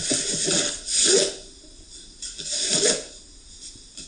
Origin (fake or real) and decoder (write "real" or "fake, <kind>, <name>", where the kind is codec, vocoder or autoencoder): real